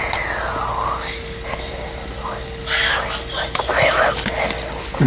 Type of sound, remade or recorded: recorded